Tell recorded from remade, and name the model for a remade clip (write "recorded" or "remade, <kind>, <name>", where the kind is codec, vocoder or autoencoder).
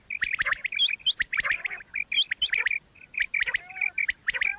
recorded